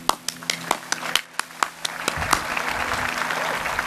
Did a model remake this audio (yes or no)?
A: no